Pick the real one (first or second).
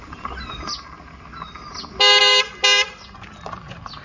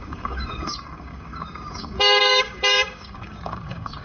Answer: first